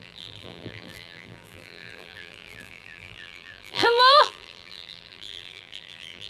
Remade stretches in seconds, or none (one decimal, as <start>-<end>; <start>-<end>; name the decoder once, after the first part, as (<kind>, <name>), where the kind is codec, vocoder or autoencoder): 0.0-6.3 (vocoder, BigVGAN v2)